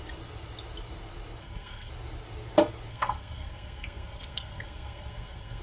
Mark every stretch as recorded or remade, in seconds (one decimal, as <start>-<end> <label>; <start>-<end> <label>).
0.0-1.4 recorded; 1.4-1.9 remade; 1.9-2.9 recorded; 2.9-5.6 remade